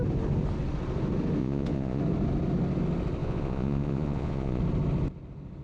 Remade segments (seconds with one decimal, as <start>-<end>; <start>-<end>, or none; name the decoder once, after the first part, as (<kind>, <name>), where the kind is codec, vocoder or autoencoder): 1.4-2.0 (vocoder, Vocos); 3.2-4.6